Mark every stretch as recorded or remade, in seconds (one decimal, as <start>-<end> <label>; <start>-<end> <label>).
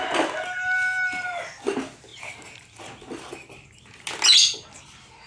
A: 0.0-5.3 recorded